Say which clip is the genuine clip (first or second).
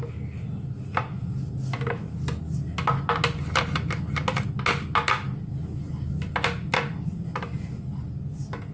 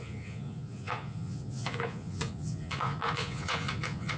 first